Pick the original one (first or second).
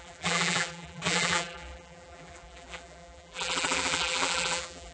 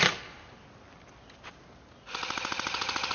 second